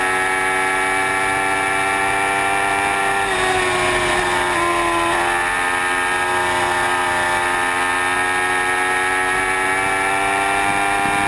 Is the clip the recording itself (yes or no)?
yes